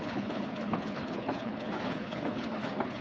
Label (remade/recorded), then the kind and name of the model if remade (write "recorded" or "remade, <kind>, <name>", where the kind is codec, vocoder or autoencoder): remade, codec, HILCodec